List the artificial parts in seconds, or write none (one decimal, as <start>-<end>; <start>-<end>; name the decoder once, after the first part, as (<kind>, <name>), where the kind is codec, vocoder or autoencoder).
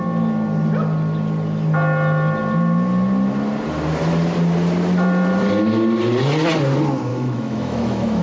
7.1-8.2 (autoencoder, DAC-VAE)